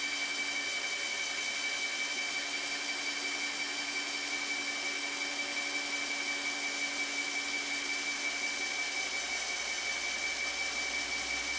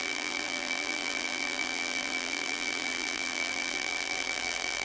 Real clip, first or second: first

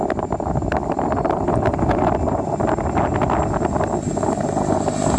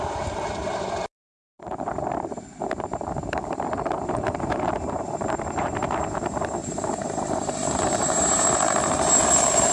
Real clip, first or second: first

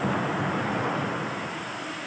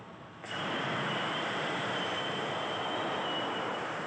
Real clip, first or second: first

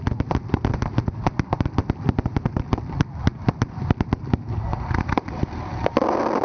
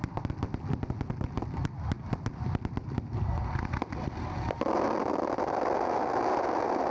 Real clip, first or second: second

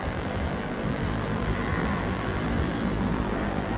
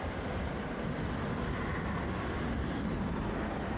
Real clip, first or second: second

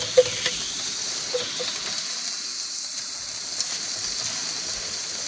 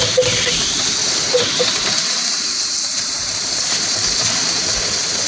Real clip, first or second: first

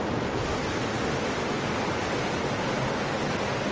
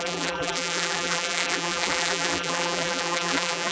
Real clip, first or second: first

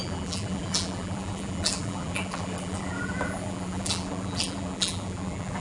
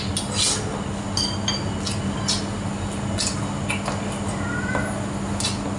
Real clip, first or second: second